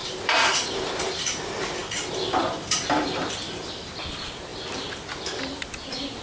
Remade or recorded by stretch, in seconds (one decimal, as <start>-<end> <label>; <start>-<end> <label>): 0.0-0.9 remade; 0.9-1.8 recorded; 1.8-3.9 remade; 3.9-6.2 recorded